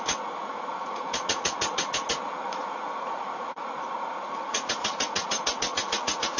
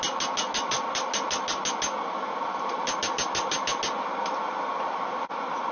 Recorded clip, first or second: second